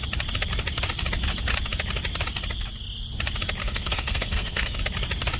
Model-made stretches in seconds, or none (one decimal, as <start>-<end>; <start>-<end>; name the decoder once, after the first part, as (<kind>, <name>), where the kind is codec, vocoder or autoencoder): 3.6-4.8 (codec, SNAC)